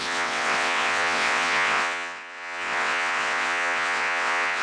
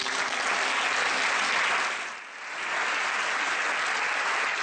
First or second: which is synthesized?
first